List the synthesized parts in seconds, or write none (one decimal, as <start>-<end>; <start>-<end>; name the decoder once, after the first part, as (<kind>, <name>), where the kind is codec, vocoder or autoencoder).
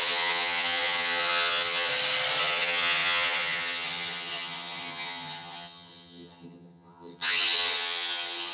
0.0-1.9 (vocoder, HiFi-GAN); 2.4-8.5